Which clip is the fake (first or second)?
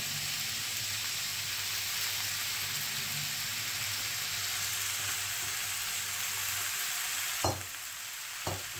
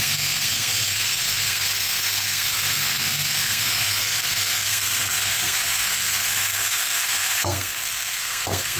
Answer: second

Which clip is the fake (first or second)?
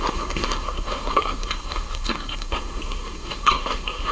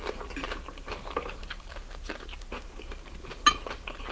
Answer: first